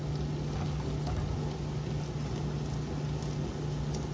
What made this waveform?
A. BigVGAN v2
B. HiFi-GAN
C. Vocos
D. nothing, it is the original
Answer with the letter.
D